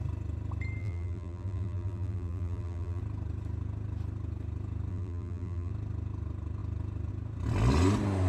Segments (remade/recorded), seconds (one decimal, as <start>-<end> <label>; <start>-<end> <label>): 0.0-0.8 recorded; 0.8-3.0 remade; 3.0-4.9 recorded; 4.9-5.7 remade; 5.7-8.3 recorded